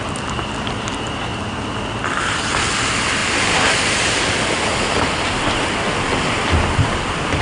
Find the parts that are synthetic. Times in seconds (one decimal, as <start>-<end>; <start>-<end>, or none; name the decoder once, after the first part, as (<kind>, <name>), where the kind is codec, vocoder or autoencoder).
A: none